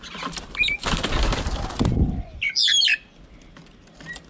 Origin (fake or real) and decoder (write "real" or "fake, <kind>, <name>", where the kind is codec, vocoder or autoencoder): real